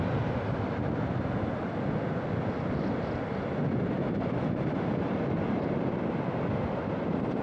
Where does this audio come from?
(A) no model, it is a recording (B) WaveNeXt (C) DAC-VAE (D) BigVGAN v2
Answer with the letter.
A